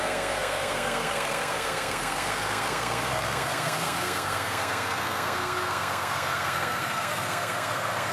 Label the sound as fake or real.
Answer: fake